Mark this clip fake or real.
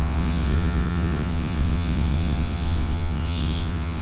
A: fake